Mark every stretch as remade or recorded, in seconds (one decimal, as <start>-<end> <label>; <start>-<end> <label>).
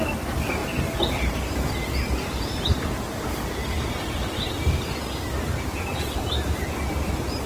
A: 0.0-7.5 recorded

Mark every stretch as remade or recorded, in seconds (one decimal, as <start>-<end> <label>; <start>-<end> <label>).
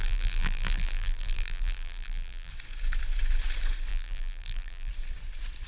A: 0.0-2.5 remade; 2.5-3.9 recorded; 3.9-4.9 remade; 4.9-5.7 recorded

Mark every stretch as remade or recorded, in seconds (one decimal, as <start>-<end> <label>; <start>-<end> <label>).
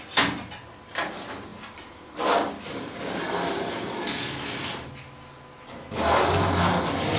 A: 0.0-1.5 recorded; 1.5-4.9 remade; 4.9-7.2 recorded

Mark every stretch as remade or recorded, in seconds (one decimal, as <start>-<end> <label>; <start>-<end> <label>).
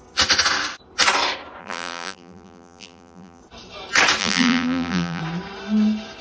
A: 0.0-1.6 recorded; 1.6-3.4 remade; 3.4-4.2 recorded; 4.2-5.2 remade; 5.2-6.2 recorded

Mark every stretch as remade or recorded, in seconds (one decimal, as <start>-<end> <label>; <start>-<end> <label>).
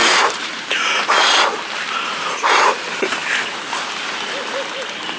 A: 0.0-1.0 remade; 1.0-5.2 recorded